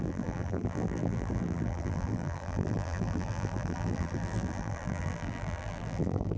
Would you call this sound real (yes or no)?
no